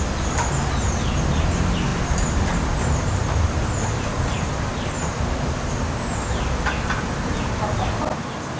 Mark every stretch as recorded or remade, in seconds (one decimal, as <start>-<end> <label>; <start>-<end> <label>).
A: 0.0-1.9 recorded; 1.9-6.0 remade; 6.0-8.6 recorded